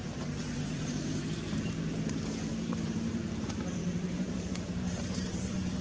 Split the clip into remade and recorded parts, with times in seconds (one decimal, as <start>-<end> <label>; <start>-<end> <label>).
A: 0.0-5.8 remade